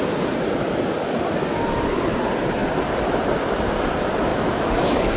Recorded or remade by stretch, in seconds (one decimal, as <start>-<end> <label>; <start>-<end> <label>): 0.0-4.3 recorded; 4.3-5.2 remade